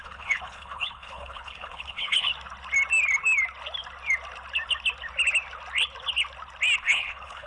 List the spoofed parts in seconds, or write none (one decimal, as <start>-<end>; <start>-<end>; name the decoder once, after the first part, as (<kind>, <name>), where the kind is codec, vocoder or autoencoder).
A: 0.0-2.3 (codec, HILCodec); 6.8-7.5